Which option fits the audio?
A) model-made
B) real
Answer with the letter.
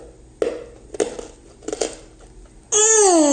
B